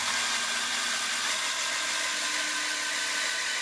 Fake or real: real